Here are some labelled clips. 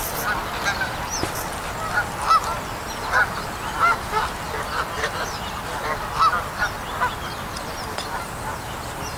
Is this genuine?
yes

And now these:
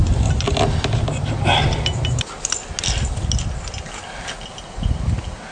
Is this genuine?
yes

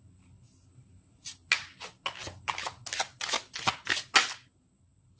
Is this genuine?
yes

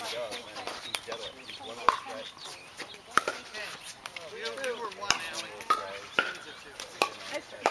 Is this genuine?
yes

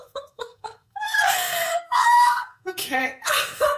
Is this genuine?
no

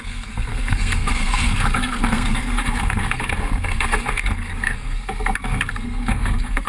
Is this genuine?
no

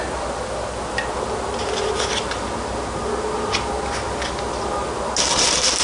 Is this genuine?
yes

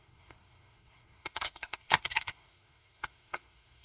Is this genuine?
no